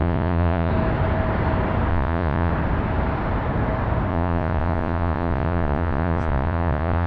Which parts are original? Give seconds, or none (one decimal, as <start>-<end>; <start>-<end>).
0.7-1.9; 2.5-4.1